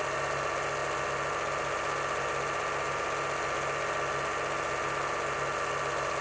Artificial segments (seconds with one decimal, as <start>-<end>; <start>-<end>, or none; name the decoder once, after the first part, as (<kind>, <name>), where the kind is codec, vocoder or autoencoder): none